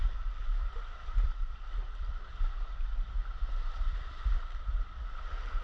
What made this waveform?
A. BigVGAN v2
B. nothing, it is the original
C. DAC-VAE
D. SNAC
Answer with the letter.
A